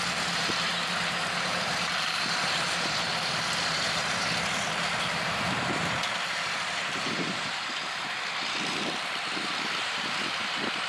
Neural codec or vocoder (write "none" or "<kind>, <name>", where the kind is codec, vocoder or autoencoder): vocoder, BigVGAN v2